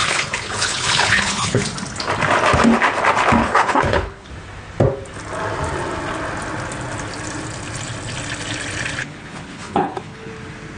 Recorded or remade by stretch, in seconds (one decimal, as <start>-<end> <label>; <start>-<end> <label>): 0.0-1.6 remade; 1.6-3.4 recorded; 3.4-4.3 remade; 4.3-9.0 recorded; 9.0-10.3 remade; 10.3-10.8 recorded